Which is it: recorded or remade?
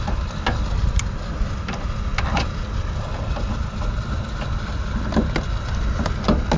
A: recorded